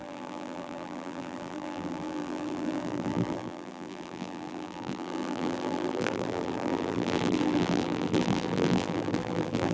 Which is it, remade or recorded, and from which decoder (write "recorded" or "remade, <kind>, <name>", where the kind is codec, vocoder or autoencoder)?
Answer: remade, vocoder, BigVGAN v2